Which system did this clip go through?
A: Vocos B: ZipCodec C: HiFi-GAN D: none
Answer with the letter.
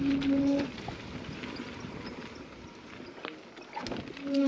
D